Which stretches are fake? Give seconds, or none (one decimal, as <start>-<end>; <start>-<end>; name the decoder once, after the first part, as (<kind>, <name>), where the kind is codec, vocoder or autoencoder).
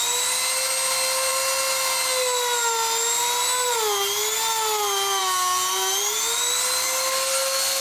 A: none